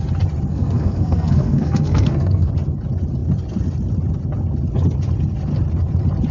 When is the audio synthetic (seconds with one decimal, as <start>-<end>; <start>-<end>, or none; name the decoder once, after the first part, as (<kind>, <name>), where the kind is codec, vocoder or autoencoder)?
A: 0.5-2.5 (codec, SNAC)